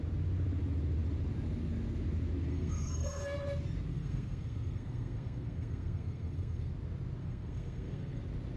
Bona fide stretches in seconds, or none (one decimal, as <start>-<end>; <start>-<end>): 0.0-2.5; 3.2-3.9; 6.7-7.2; 8.2-8.6